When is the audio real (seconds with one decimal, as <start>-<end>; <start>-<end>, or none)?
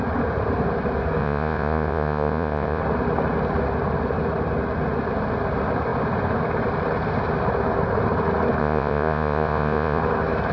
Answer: 0.0-1.2; 2.8-8.6; 10.0-10.5